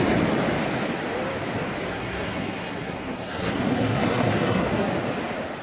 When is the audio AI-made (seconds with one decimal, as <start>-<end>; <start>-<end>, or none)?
1.9-4.9